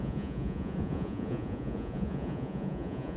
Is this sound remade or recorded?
remade